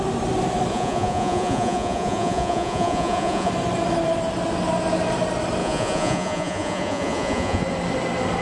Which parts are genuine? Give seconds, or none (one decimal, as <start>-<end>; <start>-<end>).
0.0-0.7; 3.5-5.6; 7.6-8.4